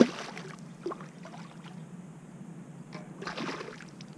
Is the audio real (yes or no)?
yes